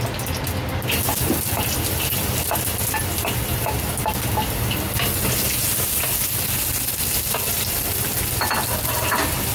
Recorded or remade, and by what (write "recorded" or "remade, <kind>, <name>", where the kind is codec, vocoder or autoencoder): recorded